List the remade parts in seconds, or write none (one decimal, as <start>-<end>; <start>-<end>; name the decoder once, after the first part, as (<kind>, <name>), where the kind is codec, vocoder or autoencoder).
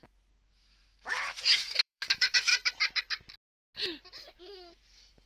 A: 0.0-2.5 (autoencoder, DAC-VAE); 4.4-5.3